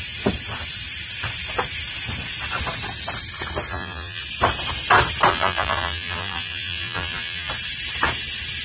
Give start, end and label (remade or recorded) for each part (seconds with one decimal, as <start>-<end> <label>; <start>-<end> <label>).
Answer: 0.0-3.7 recorded; 3.7-4.2 remade; 4.2-5.3 recorded; 5.3-7.5 remade; 7.5-8.6 recorded